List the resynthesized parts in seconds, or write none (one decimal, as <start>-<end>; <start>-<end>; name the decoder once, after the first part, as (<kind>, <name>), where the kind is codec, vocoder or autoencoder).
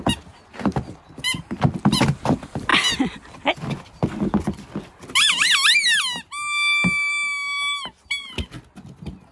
none